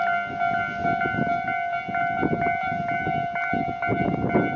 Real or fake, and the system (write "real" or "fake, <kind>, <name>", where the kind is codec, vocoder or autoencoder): real